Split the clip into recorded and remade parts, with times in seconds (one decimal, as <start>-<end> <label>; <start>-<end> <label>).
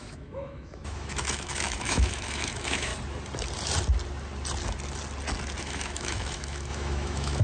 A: 0.0-2.9 remade; 2.9-5.6 recorded; 5.6-7.4 remade